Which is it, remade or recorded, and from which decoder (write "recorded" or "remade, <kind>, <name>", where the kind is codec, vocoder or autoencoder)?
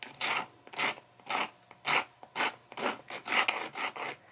recorded